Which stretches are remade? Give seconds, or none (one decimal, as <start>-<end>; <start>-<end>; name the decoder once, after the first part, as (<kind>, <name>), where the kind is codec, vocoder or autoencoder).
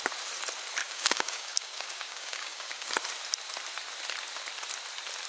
0.8-2.9 (codec, DAC)